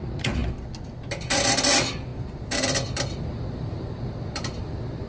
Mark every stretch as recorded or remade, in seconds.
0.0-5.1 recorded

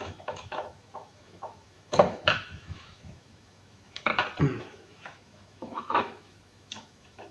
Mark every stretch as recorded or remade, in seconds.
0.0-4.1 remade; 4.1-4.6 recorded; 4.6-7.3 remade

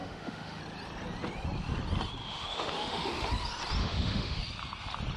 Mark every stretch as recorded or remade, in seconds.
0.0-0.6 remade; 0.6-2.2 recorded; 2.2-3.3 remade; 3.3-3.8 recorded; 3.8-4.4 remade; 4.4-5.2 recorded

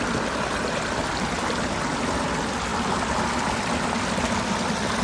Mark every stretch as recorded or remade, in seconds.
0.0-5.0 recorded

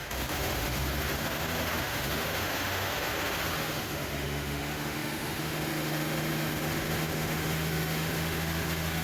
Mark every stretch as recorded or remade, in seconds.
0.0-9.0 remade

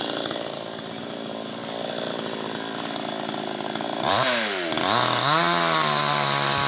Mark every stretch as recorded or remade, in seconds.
0.0-6.7 recorded

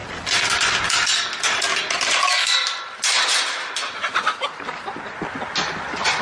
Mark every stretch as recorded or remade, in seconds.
0.0-6.2 recorded

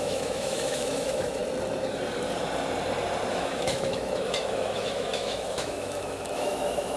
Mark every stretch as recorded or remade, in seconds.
0.0-1.4 remade; 1.4-3.3 recorded; 3.3-7.0 remade